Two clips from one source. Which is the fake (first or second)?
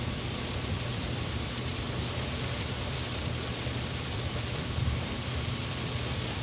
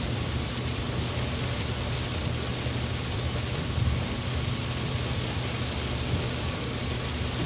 first